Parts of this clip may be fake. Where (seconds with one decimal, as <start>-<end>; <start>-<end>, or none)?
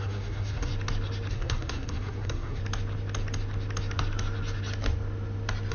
0.0-0.7; 1.3-2.6